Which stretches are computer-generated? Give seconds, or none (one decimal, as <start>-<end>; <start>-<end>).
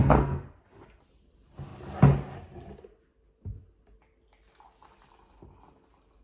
0.0-0.6